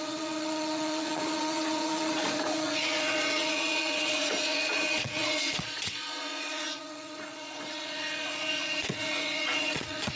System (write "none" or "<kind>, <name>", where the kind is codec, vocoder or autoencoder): vocoder, Vocos